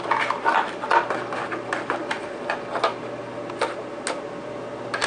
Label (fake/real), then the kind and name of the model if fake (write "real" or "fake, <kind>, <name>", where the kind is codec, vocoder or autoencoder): real